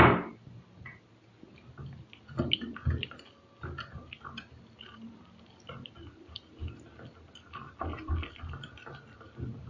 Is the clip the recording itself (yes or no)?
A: yes